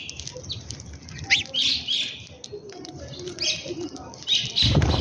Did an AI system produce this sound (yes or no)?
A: no